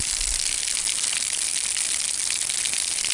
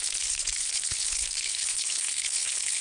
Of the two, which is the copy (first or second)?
second